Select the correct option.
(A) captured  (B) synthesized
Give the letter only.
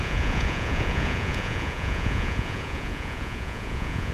B